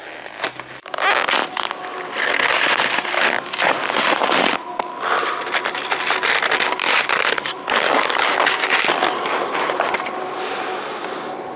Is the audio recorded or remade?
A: recorded